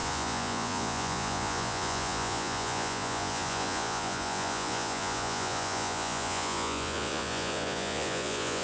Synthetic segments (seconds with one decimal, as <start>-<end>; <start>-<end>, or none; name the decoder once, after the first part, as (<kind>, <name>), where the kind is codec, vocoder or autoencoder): 0.0-8.6 (vocoder, Vocos)